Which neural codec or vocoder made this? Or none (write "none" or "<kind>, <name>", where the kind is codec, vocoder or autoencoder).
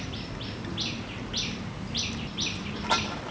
vocoder, BigVGAN v2